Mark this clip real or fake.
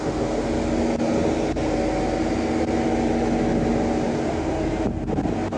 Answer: real